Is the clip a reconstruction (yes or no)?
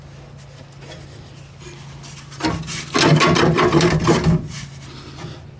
no